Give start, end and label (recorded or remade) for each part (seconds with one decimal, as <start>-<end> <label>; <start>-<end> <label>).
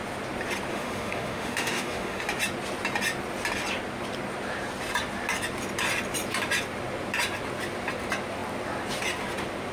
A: 0.0-0.7 recorded; 0.7-2.2 remade; 2.2-9.7 recorded